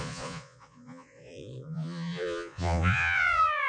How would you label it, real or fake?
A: fake